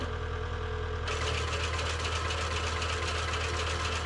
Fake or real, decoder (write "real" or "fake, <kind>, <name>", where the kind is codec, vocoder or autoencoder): real